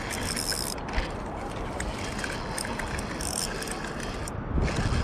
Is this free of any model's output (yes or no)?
yes